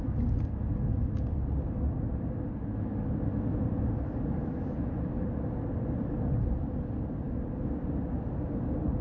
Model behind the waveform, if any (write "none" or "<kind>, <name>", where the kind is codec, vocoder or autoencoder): none